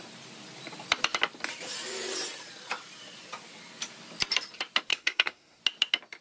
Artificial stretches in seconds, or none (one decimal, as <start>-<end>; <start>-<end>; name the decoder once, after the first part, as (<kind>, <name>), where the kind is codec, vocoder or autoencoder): 4.9-5.6 (codec, SNAC)